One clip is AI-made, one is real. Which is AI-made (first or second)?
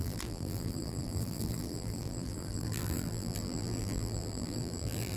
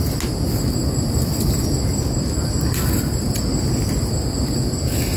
first